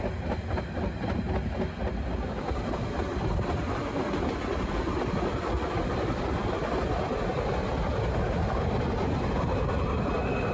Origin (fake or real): real